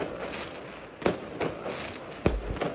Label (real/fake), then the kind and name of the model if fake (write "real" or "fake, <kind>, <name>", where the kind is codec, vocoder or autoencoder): real